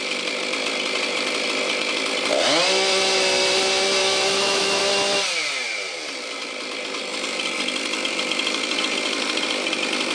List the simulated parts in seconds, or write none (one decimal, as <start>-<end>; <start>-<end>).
4.0-4.8